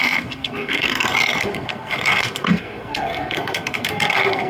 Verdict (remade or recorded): remade